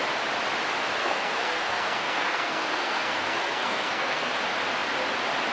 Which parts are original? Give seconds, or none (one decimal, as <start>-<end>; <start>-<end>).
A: 0.0-1.0; 4.3-5.5